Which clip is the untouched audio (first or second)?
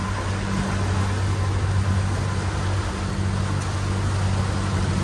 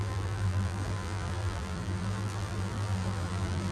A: first